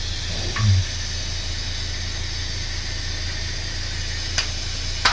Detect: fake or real real